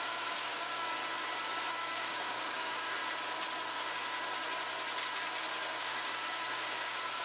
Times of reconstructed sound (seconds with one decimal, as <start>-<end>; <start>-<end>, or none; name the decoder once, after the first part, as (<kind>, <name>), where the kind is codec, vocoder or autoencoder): 0.0-1.0 (codec, DAC); 1.7-3.0; 5.8-7.2